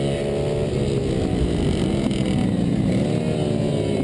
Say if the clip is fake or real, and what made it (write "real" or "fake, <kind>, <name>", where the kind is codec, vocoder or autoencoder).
real